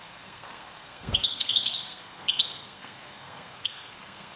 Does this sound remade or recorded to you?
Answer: remade